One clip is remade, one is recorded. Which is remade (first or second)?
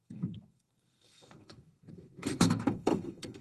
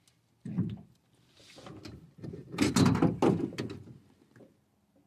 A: first